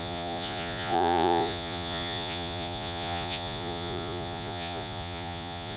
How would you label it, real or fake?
fake